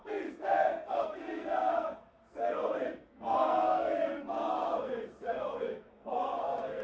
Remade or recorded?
remade